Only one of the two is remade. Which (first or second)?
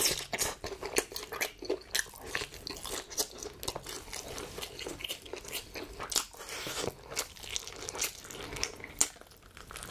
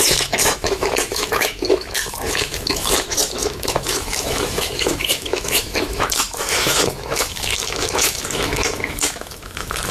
second